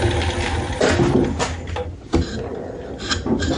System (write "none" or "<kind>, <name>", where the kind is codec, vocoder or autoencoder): none